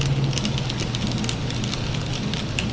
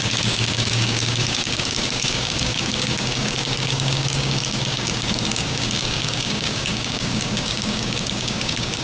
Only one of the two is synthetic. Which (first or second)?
second